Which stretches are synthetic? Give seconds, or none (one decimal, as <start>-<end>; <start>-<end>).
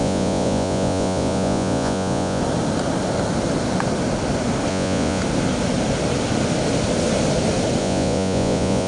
0.0-2.4; 4.7-5.2; 7.8-8.9